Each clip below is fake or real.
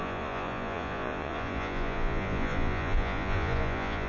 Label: fake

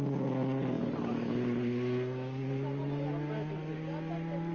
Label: real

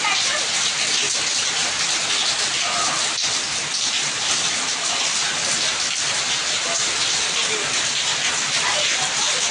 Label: real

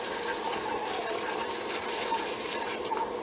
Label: real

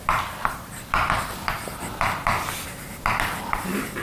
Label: real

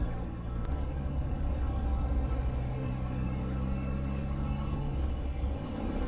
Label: fake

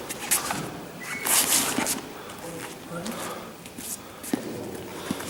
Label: real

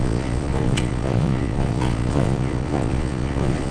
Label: fake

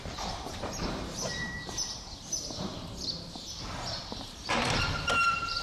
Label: fake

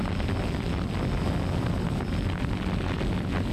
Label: real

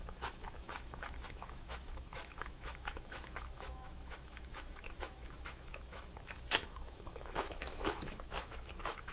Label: fake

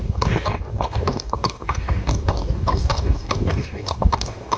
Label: fake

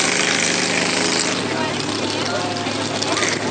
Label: real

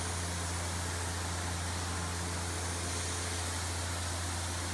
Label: real